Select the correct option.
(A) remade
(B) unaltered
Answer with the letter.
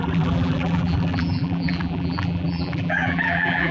A